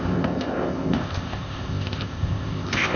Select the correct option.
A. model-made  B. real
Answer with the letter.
A